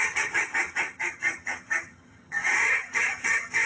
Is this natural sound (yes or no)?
no